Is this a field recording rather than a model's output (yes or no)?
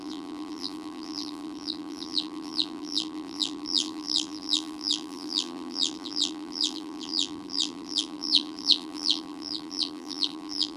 no